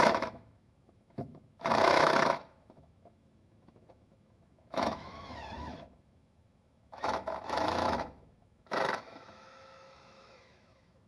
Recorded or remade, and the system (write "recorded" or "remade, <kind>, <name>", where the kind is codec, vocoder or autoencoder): remade, autoencoder, DAC-VAE